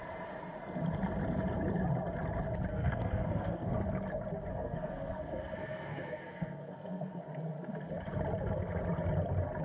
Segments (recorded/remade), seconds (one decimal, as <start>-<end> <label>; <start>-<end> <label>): 0.0-2.7 recorded; 2.7-3.7 remade; 3.7-4.5 recorded; 4.5-7.2 remade; 7.2-9.6 recorded